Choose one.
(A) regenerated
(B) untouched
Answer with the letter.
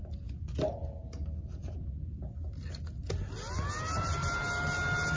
B